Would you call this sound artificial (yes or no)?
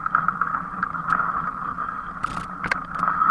no